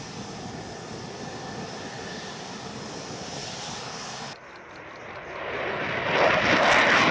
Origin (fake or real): real